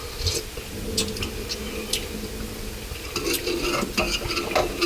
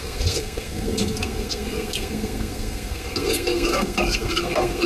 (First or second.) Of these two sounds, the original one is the first